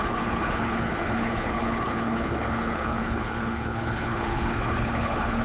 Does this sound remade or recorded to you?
remade